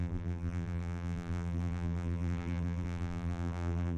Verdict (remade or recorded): remade